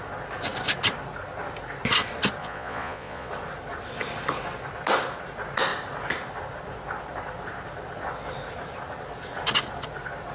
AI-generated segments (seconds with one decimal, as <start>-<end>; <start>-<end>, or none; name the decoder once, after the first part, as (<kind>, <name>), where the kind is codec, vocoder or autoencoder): 2.4-3.3 (vocoder, Vocos)